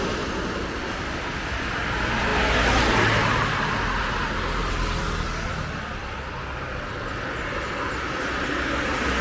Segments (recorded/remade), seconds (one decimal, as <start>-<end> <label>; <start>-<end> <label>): 0.0-9.2 recorded